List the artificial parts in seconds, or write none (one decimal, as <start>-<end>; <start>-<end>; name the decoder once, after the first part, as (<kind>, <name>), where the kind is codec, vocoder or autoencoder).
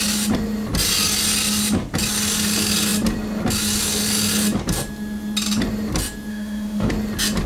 6.3-6.9 (autoencoder, DAC-VAE)